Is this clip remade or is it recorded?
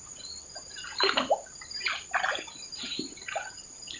recorded